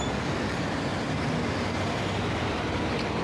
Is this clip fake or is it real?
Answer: real